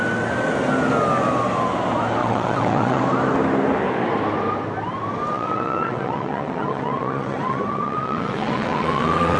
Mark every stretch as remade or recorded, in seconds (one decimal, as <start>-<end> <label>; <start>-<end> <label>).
0.0-2.2 recorded; 2.2-3.0 remade; 3.0-5.3 recorded; 5.3-9.4 remade